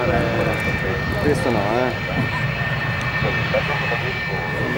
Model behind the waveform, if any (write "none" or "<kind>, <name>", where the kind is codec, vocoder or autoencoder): none